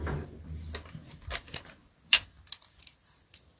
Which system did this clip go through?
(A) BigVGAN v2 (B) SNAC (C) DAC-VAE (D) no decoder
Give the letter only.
D